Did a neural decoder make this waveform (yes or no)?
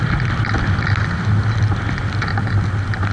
no